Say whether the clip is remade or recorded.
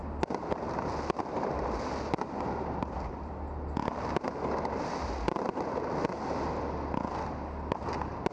recorded